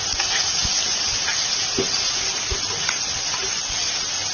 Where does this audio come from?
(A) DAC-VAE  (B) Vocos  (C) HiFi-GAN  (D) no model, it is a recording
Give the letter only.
D